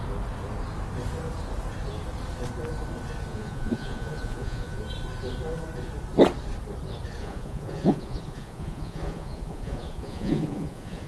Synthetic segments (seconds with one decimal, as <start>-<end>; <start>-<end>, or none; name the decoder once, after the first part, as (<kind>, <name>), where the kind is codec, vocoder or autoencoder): 3.3-4.8 (vocoder, Vocos); 7.2-11.1